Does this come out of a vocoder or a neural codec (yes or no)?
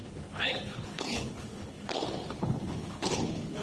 yes